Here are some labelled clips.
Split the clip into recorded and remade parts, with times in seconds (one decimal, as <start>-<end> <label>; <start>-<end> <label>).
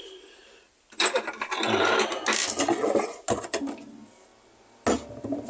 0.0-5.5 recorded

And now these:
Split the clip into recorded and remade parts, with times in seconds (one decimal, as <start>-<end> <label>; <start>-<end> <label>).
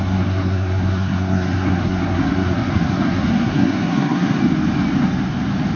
0.0-4.4 remade; 4.4-5.8 recorded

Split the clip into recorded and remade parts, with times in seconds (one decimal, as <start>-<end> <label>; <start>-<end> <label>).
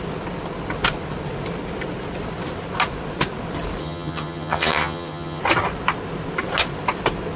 0.0-3.8 recorded; 3.8-5.4 remade; 5.4-7.4 recorded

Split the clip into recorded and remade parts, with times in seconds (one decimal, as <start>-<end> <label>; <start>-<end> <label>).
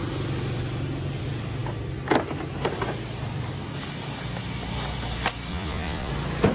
0.0-5.5 recorded; 5.5-6.1 remade; 6.1-6.5 recorded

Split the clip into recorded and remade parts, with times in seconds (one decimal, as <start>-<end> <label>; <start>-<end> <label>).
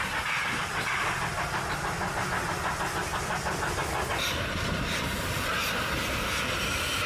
0.0-7.1 recorded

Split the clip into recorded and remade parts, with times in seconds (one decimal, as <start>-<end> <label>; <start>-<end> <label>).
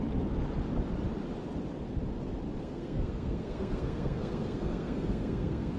0.0-2.6 recorded; 2.6-5.8 remade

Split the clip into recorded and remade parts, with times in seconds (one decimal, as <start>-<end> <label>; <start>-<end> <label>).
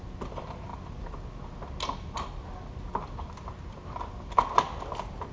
0.0-5.3 recorded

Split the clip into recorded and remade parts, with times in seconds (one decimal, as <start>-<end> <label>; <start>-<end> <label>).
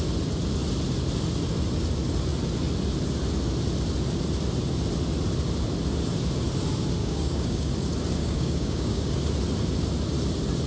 0.0-7.0 recorded; 7.0-7.7 remade; 7.7-8.2 recorded; 8.2-9.1 remade; 9.1-10.7 recorded